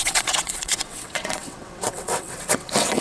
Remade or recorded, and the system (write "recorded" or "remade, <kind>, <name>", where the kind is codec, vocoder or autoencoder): remade, vocoder, WaveNeXt